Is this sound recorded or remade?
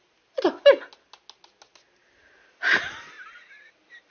recorded